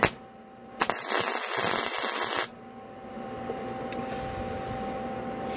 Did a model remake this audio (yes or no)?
no